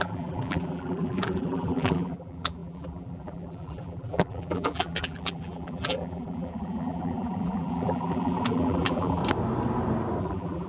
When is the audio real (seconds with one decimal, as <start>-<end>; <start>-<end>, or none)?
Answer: 9.2-10.2